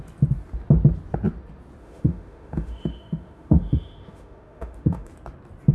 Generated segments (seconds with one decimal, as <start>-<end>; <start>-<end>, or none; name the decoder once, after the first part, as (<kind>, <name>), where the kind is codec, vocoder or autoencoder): 1.8-5.1 (autoencoder, DAC-VAE)